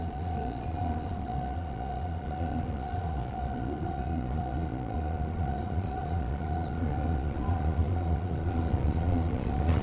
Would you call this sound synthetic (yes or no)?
yes